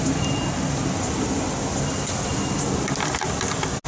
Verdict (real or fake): real